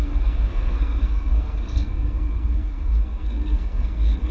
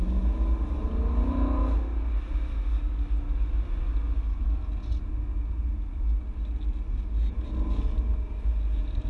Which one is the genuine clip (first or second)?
second